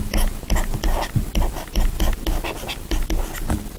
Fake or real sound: real